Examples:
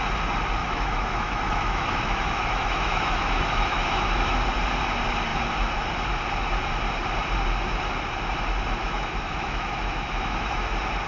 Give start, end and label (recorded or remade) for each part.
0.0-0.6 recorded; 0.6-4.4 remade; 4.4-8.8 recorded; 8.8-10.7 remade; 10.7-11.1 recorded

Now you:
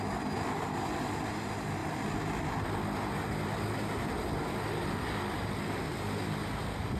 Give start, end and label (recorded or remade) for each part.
0.0-7.0 recorded

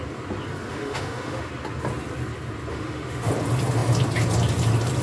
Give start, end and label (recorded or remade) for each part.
0.0-0.7 recorded; 0.7-1.5 remade; 1.5-2.7 recorded; 2.7-3.3 remade; 3.3-5.0 recorded

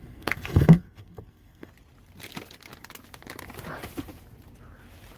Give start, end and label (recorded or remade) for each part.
0.0-1.7 remade; 1.7-5.2 recorded

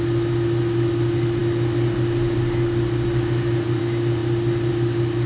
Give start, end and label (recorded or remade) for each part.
0.0-5.3 recorded

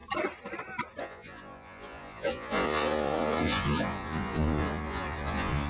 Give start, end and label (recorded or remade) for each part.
0.0-1.0 recorded; 1.0-5.7 remade

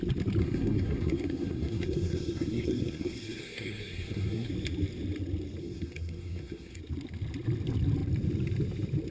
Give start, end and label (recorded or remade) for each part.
0.0-0.4 recorded; 0.4-4.5 remade; 4.5-5.6 recorded; 5.6-6.8 remade; 6.8-9.1 recorded